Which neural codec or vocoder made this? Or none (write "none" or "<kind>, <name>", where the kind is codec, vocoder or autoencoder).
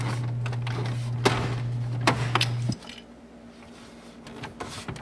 none